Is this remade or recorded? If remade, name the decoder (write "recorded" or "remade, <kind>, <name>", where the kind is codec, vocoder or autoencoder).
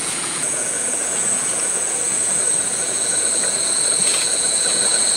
remade, vocoder, Vocos